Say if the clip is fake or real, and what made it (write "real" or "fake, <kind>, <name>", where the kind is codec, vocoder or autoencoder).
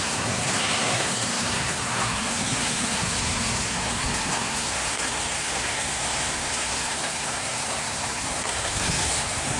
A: fake, codec, SNAC